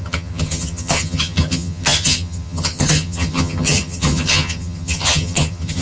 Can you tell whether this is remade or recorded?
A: remade